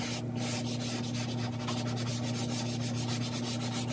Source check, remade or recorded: recorded